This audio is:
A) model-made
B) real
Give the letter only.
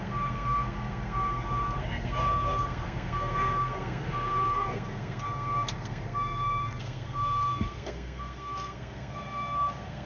A